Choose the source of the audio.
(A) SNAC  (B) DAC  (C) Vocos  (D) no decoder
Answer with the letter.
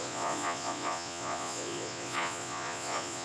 C